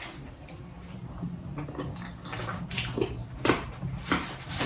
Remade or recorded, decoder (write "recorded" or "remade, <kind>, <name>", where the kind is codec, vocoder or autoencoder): recorded